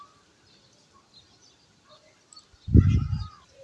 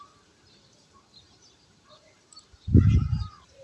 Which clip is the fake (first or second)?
second